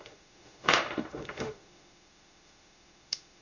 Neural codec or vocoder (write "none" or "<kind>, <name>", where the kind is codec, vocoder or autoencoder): autoencoder, DAC-VAE